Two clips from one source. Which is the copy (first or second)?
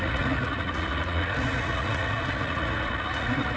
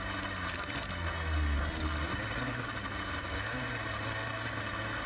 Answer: first